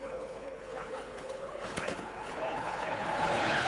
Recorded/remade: remade